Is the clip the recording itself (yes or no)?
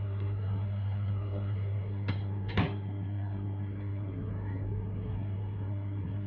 no